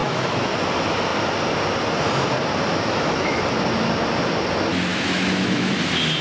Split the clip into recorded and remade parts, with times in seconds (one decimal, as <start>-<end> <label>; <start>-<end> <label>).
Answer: 0.0-0.5 remade; 0.5-2.7 recorded; 2.7-3.4 remade; 3.4-4.9 recorded; 4.9-5.8 remade; 5.8-6.2 recorded